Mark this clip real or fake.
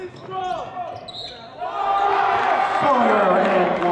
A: real